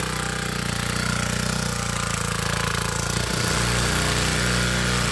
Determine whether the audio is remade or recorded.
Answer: recorded